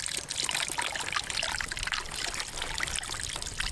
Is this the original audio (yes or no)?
yes